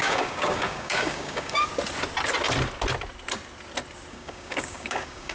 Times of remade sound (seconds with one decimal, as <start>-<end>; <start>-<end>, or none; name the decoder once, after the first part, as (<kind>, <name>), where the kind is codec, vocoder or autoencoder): 0.0-1.7 (codec, DAC); 4.1-5.3